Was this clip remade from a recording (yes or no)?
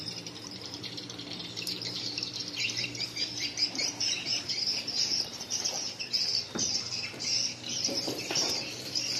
yes